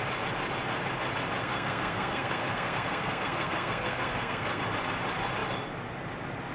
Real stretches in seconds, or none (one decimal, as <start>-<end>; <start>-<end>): 0.0-1.4; 4.6-6.5